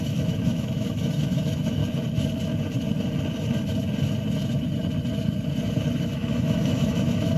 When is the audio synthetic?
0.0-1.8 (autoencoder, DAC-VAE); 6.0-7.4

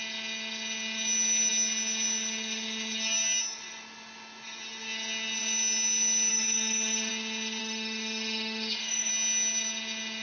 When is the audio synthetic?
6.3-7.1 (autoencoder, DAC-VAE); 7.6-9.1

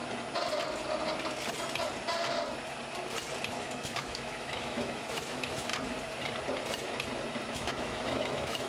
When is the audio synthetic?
3.5-5.7 (autoencoder, DAC-VAE); 7.5-8.7